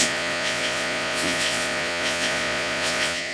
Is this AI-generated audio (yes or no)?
yes